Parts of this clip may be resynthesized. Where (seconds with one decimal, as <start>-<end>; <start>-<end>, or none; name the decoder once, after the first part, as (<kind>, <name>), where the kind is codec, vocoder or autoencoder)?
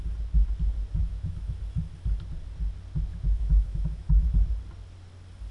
1.0-1.6 (autoencoder, DAC-VAE); 3.1-4.3